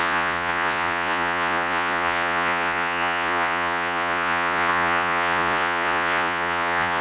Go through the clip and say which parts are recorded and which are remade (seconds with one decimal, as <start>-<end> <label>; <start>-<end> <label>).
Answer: 0.0-7.0 remade